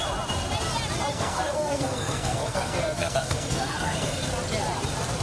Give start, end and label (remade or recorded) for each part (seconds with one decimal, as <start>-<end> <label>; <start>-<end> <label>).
0.0-1.1 recorded; 1.1-4.2 remade; 4.2-5.2 recorded